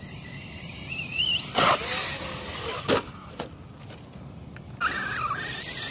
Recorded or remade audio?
recorded